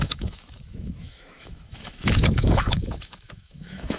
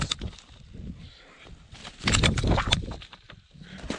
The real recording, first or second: second